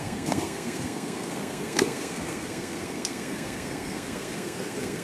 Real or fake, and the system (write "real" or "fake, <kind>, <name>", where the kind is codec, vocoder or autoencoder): fake, codec, SNAC